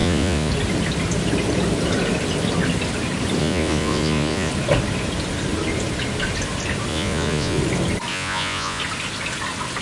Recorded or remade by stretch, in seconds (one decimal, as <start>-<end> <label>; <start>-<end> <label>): 0.0-0.5 remade; 0.5-3.4 recorded; 3.4-4.5 remade; 4.5-6.9 recorded; 6.9-7.6 remade; 7.6-8.1 recorded; 8.1-8.8 remade; 8.8-9.8 recorded